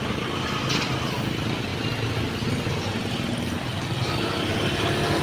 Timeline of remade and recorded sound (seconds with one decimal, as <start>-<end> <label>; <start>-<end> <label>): 0.0-5.2 recorded